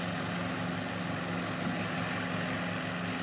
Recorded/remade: recorded